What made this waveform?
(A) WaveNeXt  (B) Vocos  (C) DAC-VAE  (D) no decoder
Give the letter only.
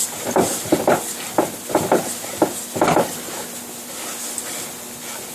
D